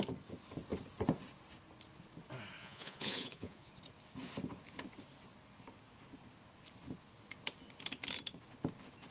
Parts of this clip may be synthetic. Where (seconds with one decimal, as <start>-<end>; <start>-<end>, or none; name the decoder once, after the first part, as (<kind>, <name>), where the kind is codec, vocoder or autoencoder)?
2.6-3.7 (vocoder, Vocos)